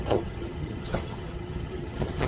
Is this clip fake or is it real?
fake